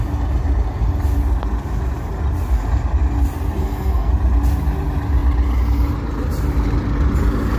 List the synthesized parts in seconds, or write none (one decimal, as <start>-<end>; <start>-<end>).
3.6-4.1

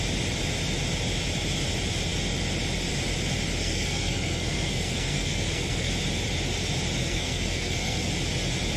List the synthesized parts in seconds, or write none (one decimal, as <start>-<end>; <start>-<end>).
3.6-5.9; 7.0-8.1

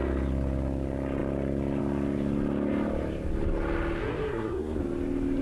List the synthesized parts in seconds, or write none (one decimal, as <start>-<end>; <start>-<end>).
4.0-4.8